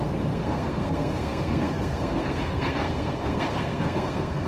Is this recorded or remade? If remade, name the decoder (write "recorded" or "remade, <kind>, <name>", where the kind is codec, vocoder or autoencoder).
remade, codec, SNAC